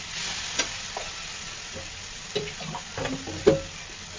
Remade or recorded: recorded